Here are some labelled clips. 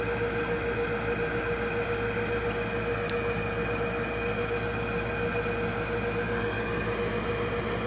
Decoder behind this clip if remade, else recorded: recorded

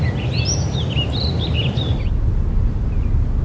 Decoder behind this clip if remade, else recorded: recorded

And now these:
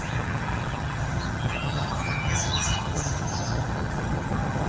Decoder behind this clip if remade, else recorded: remade, vocoder, HiFi-GAN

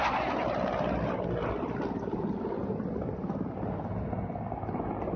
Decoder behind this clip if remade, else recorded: recorded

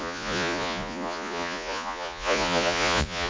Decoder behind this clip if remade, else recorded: remade, vocoder, Vocos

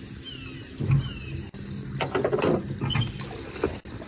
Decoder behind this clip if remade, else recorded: recorded